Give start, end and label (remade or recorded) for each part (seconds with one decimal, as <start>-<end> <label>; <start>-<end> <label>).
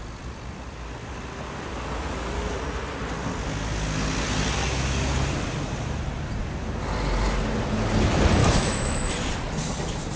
0.0-8.4 recorded; 8.4-9.1 remade; 9.1-10.2 recorded